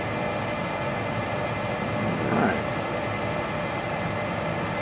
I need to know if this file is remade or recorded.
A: recorded